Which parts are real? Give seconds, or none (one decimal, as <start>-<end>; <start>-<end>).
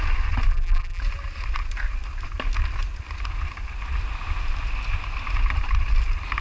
0.0-0.5; 1.0-6.4